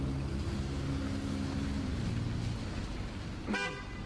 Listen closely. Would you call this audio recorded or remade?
recorded